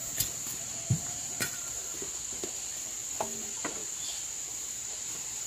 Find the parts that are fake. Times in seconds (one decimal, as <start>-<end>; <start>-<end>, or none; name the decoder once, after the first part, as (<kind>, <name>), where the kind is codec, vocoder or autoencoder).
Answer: 0.0-1.8 (vocoder, BigVGAN v2); 3.4-3.8; 4.5-5.5